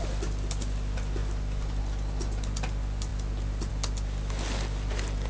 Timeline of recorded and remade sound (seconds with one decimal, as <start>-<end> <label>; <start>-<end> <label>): 0.0-5.3 recorded